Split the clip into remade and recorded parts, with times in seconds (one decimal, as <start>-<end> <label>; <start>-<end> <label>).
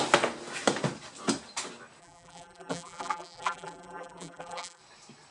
0.0-2.0 recorded; 2.0-4.8 remade; 4.8-5.3 recorded